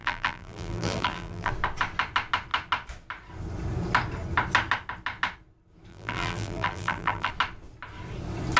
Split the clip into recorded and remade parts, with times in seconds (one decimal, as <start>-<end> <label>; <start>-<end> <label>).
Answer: 0.0-1.5 remade; 1.5-5.9 recorded; 5.9-7.3 remade; 7.3-8.6 recorded